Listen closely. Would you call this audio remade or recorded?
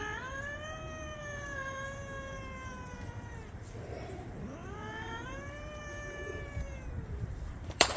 remade